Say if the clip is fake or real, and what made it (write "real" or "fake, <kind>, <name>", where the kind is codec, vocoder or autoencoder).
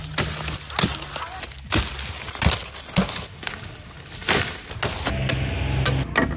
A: real